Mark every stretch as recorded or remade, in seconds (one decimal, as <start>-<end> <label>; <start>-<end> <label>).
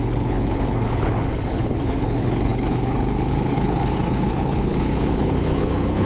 0.0-6.1 remade